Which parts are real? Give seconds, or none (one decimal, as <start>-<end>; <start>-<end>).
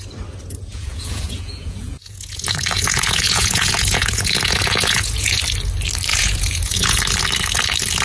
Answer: 0.0-0.7; 5.4-6.1; 7.0-8.0